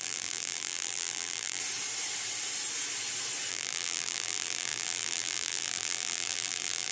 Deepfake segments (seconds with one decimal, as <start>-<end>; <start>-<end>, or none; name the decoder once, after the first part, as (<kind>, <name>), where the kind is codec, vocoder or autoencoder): 0.0-1.6 (vocoder, BigVGAN v2); 3.5-6.9

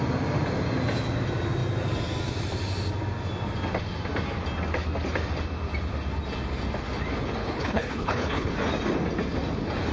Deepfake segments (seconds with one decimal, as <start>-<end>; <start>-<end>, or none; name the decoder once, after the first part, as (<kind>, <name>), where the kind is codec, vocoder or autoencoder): 7.4-8.5 (codec, HILCodec)

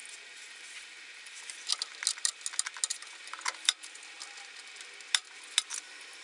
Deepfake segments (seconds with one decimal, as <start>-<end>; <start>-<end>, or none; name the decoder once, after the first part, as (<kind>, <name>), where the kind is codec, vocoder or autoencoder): none

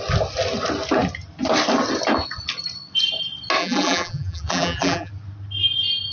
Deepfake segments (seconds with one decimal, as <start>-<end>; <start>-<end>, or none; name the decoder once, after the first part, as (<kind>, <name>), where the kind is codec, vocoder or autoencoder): 3.6-5.1 (vocoder, BigVGAN v2)

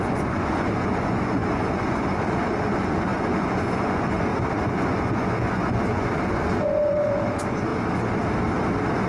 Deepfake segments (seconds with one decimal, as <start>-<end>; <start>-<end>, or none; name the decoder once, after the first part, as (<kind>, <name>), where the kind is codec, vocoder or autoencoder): 0.0-7.7 (vocoder, Vocos)